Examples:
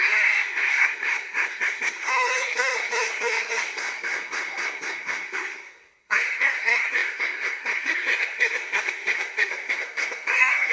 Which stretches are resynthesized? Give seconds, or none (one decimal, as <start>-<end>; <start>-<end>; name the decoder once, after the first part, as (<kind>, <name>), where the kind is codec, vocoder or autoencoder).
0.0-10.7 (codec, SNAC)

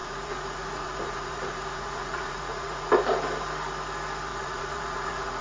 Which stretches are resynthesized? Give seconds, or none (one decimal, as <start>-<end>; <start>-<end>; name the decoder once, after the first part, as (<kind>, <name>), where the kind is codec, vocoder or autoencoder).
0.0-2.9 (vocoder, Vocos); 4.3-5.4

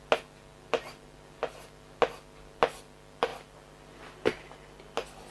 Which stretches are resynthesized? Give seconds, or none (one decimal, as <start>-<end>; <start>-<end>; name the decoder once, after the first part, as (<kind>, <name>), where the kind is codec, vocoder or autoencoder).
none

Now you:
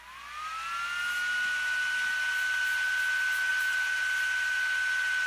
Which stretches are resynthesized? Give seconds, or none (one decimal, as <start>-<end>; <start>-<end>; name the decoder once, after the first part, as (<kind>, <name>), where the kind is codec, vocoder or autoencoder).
3.5-4.0 (vocoder, BigVGAN v2)

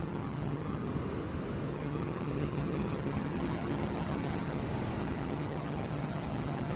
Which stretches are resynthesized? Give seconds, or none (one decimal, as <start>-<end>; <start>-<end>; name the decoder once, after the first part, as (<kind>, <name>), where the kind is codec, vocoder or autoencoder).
0.0-0.9 (vocoder, HiFi-GAN); 1.7-4.6; 5.0-6.8